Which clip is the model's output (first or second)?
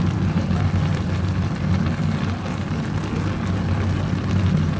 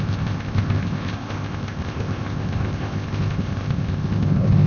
second